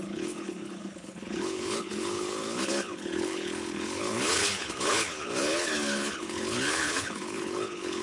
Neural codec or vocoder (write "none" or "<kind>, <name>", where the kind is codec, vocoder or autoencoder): codec, HILCodec